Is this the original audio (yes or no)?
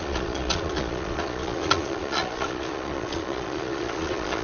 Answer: no